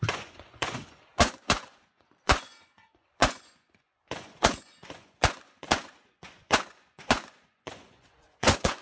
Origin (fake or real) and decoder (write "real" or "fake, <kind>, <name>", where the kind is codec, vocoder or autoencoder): fake, vocoder, Vocos